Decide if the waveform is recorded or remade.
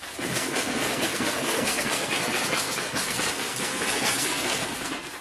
remade